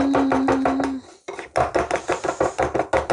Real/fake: real